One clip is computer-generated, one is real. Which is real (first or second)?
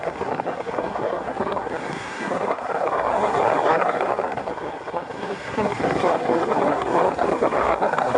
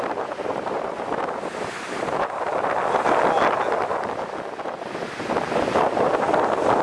second